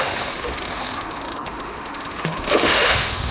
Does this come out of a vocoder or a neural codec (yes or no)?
yes